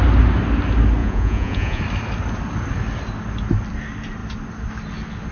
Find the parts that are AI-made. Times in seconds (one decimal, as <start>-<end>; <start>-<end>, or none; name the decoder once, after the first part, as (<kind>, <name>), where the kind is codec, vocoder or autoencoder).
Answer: 1.0-1.8 (vocoder, Vocos)